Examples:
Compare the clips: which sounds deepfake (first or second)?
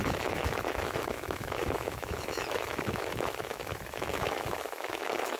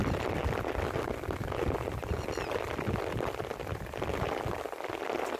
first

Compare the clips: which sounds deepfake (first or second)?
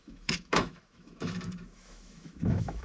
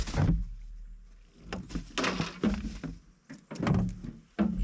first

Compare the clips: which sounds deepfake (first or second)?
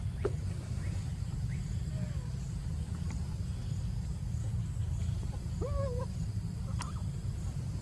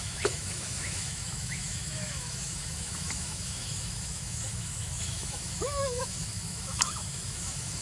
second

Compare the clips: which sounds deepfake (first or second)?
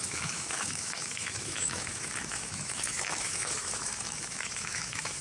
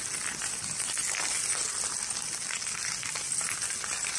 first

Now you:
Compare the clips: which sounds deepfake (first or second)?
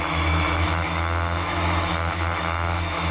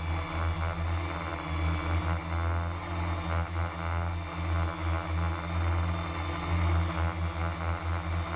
first